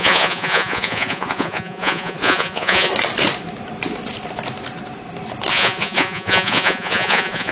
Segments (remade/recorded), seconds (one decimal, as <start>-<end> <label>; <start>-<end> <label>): 0.0-2.9 remade; 2.9-5.5 recorded; 5.5-7.5 remade